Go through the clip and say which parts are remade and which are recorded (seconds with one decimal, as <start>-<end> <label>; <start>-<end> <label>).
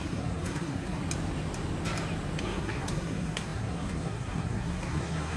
0.0-1.0 remade; 1.0-2.4 recorded; 2.4-5.4 remade